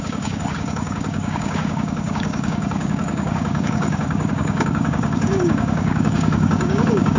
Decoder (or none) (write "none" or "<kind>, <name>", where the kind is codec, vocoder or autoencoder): codec, DAC